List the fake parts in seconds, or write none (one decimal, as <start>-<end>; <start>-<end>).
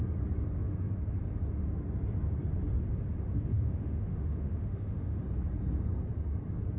3.5-5.2